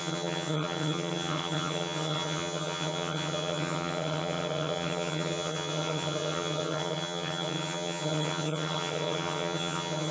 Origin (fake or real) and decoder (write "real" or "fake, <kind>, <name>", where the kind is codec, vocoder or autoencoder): fake, vocoder, HiFi-GAN